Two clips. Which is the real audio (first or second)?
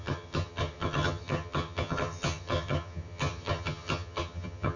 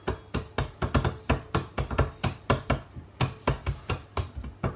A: second